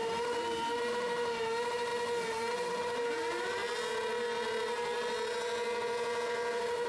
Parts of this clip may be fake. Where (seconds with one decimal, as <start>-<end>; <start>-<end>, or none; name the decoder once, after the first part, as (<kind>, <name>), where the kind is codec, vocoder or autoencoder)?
0.0-1.9 (vocoder, BigVGAN v2); 2.5-3.6